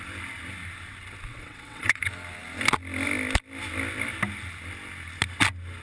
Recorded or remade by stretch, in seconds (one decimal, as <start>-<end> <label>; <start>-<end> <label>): 0.0-1.3 recorded; 1.3-2.0 remade; 2.0-5.8 recorded